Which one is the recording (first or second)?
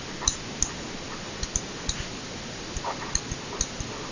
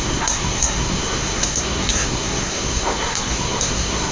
first